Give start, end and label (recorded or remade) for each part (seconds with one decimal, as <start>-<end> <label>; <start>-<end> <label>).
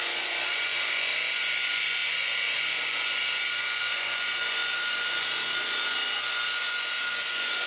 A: 0.0-7.7 remade